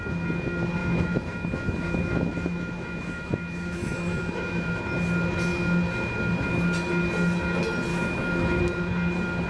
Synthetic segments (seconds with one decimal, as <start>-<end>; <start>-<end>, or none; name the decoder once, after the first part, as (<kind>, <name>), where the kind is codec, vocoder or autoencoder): 0.8-4.8 (autoencoder, DAC-VAE); 7.9-8.6